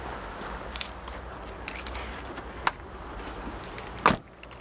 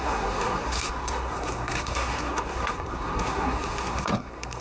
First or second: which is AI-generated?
second